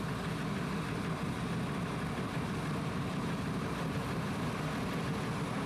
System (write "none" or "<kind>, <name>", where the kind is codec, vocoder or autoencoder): none